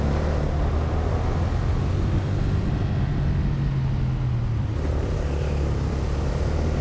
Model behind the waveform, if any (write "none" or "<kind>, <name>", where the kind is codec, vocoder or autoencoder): none